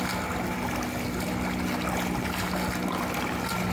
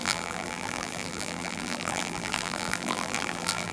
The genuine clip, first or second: first